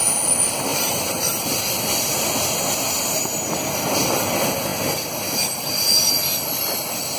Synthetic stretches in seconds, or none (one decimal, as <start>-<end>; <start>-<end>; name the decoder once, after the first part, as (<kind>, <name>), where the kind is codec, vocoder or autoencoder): none